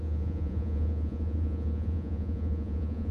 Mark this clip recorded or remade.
remade